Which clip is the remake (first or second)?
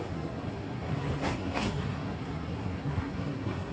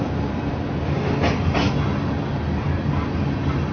first